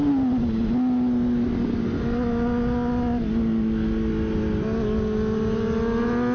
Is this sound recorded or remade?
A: recorded